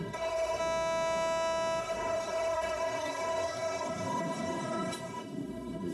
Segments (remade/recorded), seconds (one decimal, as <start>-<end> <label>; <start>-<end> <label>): 0.0-0.6 remade; 0.6-1.8 recorded; 1.8-5.9 remade